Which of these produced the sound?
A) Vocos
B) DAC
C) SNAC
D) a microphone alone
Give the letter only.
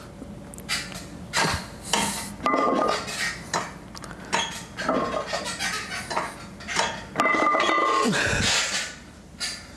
D